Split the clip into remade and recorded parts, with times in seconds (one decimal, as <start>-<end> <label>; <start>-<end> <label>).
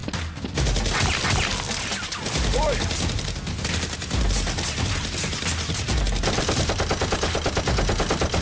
0.0-8.4 recorded